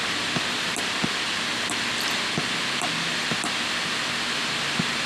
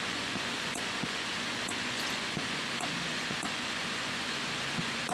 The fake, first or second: second